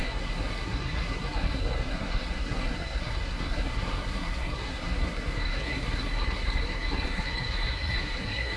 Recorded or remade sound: remade